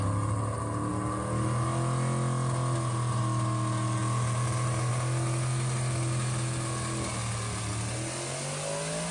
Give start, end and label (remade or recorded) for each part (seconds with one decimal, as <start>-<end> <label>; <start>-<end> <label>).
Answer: 0.0-9.1 recorded